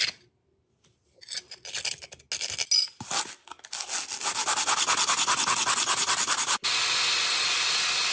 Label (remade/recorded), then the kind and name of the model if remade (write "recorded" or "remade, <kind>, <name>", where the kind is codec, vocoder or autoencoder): recorded